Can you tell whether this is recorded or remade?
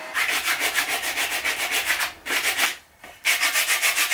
recorded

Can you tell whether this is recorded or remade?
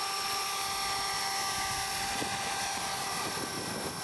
recorded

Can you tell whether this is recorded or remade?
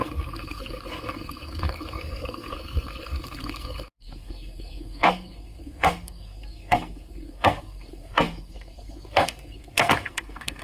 remade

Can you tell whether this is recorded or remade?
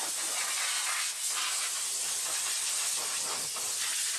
recorded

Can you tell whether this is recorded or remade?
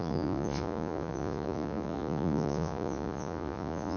remade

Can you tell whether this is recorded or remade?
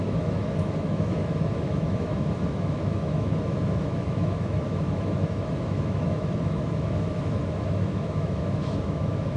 remade